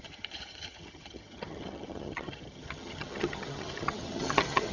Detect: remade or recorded remade